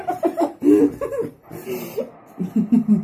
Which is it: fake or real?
real